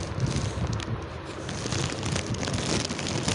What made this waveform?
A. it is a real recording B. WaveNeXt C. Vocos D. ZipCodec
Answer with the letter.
A